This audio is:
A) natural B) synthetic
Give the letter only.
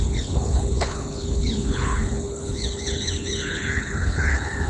B